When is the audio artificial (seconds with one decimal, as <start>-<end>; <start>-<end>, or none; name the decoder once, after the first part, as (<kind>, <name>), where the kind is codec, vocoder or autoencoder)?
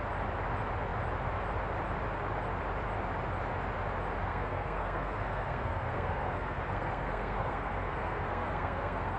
4.3-9.2 (codec, SNAC)